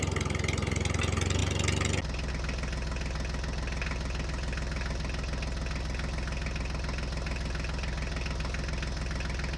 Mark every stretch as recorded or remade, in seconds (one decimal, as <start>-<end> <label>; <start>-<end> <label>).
0.0-9.6 recorded